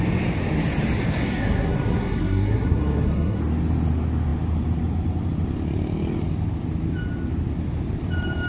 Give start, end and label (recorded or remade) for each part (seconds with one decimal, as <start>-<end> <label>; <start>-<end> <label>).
0.0-1.2 recorded; 1.2-3.4 remade; 3.4-8.5 recorded